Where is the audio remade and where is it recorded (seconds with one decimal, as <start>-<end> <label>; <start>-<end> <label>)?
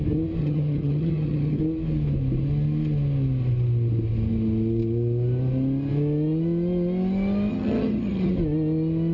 0.0-0.4 recorded; 0.4-1.6 remade; 1.6-7.5 recorded; 7.5-8.3 remade; 8.3-9.1 recorded